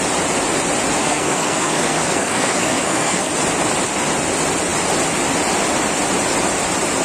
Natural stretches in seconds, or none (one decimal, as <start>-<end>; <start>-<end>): 0.0-1.0; 3.3-7.0